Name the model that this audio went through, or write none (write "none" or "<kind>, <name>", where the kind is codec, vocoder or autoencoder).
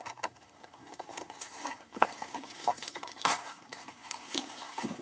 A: codec, SNAC